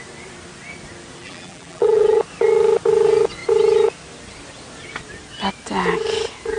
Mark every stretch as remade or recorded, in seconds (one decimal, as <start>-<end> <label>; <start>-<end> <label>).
0.0-1.2 recorded; 1.2-2.2 remade; 2.2-6.6 recorded